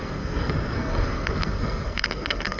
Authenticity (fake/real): fake